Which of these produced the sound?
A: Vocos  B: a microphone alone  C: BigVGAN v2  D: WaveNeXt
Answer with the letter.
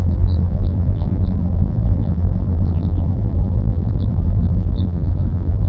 C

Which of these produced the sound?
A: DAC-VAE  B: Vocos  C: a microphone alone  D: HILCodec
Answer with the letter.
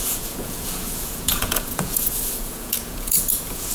B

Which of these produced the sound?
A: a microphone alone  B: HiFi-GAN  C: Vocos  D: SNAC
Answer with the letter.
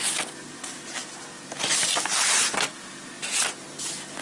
A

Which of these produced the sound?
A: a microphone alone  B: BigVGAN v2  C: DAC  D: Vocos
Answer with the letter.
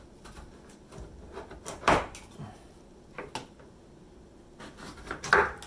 A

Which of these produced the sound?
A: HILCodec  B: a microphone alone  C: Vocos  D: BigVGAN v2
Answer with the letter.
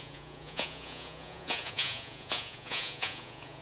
C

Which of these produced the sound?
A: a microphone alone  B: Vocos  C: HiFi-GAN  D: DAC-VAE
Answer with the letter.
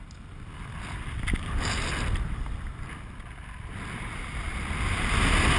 A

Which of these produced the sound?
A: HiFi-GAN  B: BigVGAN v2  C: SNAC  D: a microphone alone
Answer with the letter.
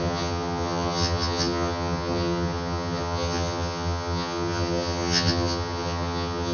A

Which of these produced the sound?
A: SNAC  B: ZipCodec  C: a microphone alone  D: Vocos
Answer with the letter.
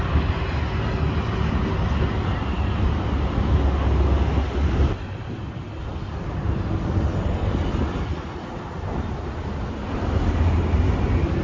C